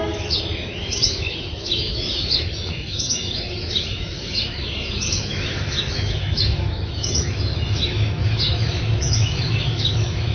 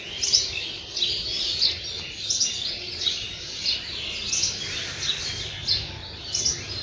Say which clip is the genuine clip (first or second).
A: second